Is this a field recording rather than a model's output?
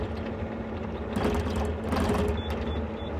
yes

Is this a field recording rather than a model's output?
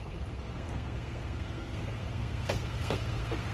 no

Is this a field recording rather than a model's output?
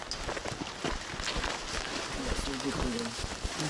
yes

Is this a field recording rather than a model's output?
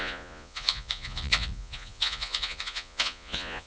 no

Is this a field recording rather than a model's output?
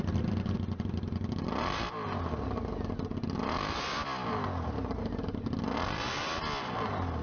yes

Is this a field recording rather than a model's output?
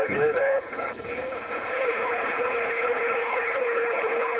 no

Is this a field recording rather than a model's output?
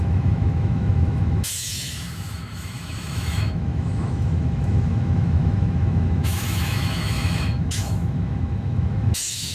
no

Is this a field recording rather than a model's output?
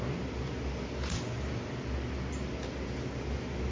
yes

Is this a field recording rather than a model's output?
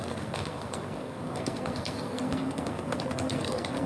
no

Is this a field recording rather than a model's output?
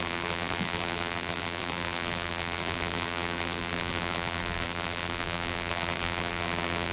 no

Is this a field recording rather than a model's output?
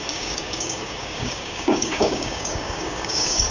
no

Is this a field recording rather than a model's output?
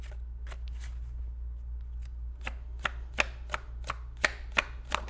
yes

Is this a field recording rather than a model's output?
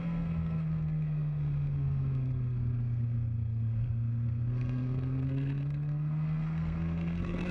no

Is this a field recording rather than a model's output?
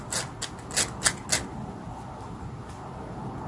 yes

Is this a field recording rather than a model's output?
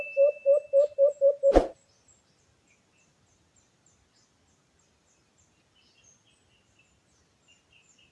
yes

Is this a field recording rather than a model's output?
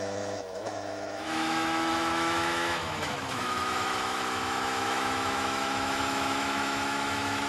no